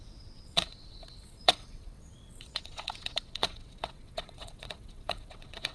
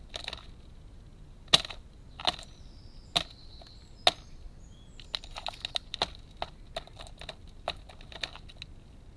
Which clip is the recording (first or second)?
second